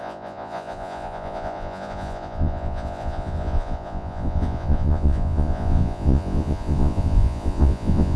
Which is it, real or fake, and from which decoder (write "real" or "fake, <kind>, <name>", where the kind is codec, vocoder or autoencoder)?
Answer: fake, vocoder, Vocos